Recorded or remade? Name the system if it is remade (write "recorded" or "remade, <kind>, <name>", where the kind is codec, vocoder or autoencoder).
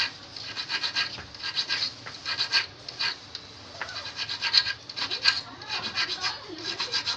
recorded